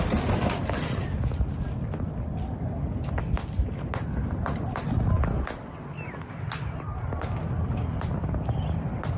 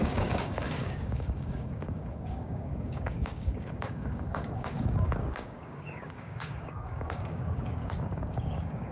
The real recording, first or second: first